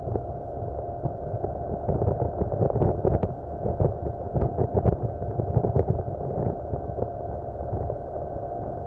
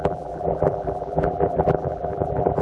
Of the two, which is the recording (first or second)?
first